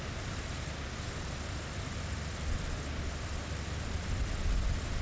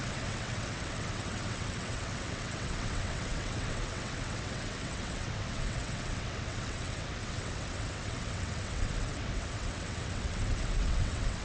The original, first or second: first